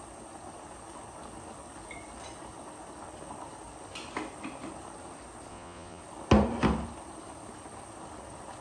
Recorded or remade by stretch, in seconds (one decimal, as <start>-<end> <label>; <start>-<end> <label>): 0.0-5.5 recorded; 5.5-6.0 remade; 6.0-8.6 recorded